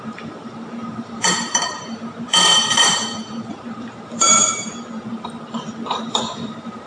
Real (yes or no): no